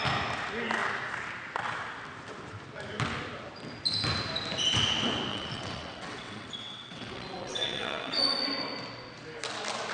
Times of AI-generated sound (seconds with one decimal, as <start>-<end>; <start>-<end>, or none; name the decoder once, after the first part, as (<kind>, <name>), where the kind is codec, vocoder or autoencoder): 5.3-8.2 (vocoder, WaveNeXt)